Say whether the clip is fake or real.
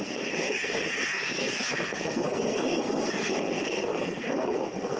fake